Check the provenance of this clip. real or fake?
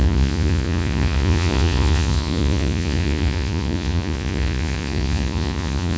fake